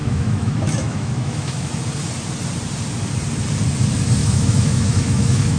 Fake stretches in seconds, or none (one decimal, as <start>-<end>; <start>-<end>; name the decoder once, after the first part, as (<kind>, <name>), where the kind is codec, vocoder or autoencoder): 0.0-1.7 (autoencoder, DAC-VAE); 4.2-5.6